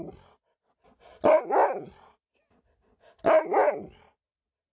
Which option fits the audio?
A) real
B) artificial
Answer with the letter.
A